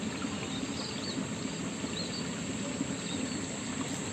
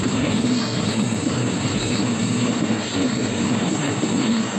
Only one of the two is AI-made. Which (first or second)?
second